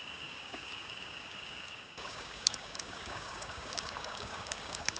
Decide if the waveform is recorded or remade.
remade